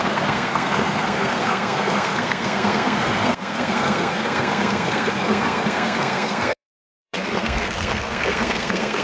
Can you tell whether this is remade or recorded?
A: remade